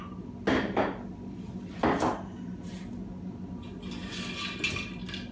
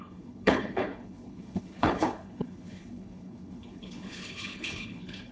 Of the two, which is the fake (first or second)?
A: second